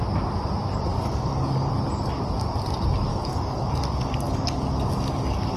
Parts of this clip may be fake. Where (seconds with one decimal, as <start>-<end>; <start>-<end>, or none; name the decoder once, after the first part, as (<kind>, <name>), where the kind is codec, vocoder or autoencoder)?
0.9-1.7 (codec, DAC); 3.1-5.6